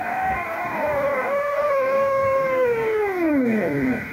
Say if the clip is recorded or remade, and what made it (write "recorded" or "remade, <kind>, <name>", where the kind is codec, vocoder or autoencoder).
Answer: remade, codec, DAC